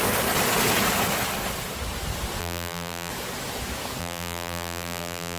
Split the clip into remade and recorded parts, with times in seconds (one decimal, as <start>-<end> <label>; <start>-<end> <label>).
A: 0.0-2.4 recorded; 2.4-3.1 remade; 3.1-4.0 recorded; 4.0-5.4 remade